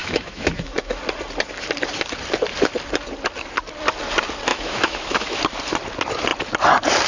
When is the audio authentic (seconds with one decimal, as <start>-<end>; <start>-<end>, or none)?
1.0-4.5; 5.4-7.1